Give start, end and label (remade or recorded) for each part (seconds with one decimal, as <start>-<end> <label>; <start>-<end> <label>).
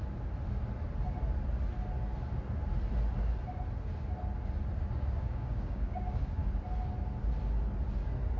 0.0-4.9 recorded; 4.9-6.4 remade; 6.4-8.4 recorded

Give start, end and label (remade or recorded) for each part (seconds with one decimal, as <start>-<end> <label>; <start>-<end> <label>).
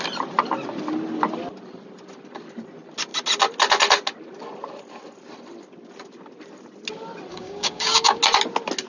0.0-7.3 recorded; 7.3-8.2 remade; 8.2-8.9 recorded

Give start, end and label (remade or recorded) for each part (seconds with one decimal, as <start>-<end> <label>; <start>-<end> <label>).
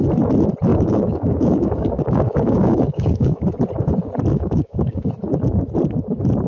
0.0-0.7 recorded; 0.7-3.5 remade; 3.5-4.3 recorded; 4.3-5.1 remade; 5.1-6.5 recorded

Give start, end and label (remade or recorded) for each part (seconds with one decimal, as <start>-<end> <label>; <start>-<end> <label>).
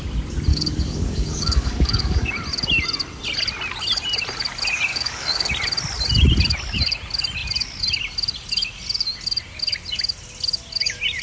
0.0-0.5 recorded; 0.5-2.3 remade; 2.3-4.9 recorded; 4.9-5.5 remade; 5.5-11.2 recorded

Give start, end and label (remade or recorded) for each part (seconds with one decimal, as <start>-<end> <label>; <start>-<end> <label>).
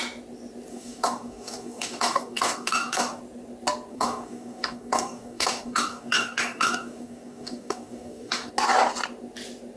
0.0-0.7 recorded; 0.7-3.2 remade; 3.2-3.9 recorded; 3.9-8.5 remade; 8.5-9.8 recorded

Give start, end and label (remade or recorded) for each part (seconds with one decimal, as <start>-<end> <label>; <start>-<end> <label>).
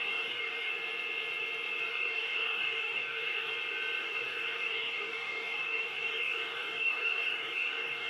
0.0-0.7 remade; 0.7-1.9 recorded; 1.9-3.5 remade; 3.5-4.0 recorded; 4.0-8.1 remade